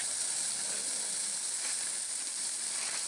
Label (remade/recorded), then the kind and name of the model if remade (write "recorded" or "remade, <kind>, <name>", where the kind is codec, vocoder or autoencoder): remade, vocoder, BigVGAN v2